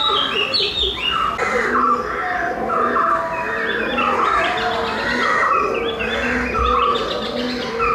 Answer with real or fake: real